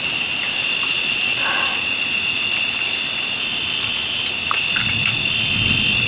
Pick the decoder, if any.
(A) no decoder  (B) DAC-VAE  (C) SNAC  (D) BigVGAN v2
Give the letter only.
A